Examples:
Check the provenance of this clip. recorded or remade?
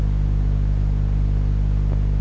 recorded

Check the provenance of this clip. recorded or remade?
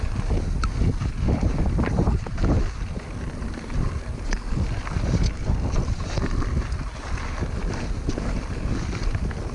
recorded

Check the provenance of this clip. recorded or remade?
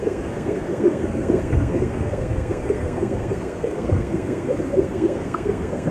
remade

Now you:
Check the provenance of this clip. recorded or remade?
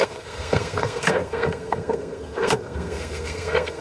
remade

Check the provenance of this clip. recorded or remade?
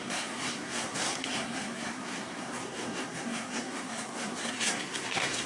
remade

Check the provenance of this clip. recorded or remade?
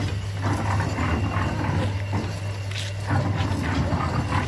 recorded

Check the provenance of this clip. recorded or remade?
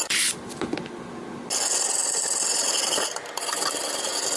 recorded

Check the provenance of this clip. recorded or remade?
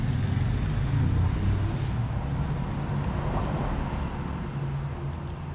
recorded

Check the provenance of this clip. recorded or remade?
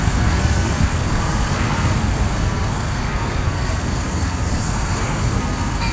remade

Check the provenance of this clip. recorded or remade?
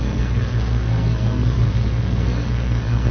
remade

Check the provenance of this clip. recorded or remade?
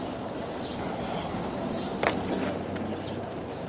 recorded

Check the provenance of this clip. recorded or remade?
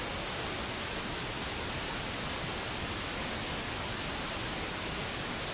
recorded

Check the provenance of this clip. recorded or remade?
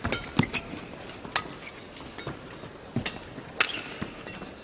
recorded